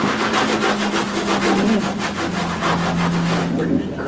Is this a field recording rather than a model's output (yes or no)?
yes